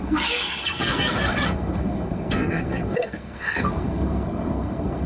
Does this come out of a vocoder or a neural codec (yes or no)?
yes